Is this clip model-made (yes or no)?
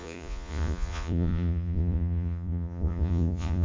yes